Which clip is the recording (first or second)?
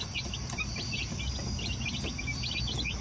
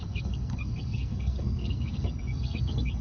first